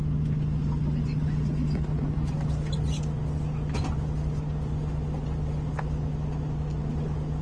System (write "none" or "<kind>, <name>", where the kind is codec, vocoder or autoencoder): none